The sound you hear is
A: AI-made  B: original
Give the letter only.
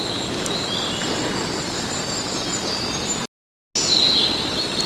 B